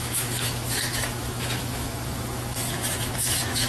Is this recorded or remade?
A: remade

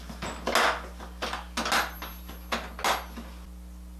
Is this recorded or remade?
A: recorded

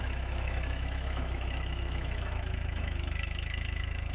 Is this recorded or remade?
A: remade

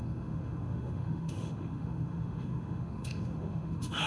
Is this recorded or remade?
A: remade